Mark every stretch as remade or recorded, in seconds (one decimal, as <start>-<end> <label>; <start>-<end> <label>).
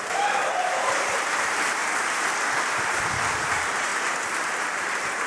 0.0-1.8 remade; 1.8-2.6 recorded; 2.6-3.9 remade; 3.9-4.6 recorded; 4.6-5.3 remade